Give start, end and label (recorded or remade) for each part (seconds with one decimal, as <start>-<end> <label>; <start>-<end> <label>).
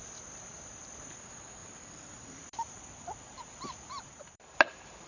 0.0-1.6 recorded; 1.6-5.1 remade